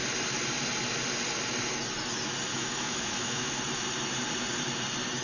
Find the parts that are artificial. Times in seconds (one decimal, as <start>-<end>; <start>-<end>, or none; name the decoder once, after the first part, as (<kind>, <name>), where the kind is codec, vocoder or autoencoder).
2.5-3.6 (autoencoder, DAC-VAE)